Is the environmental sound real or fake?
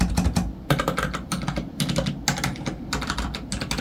real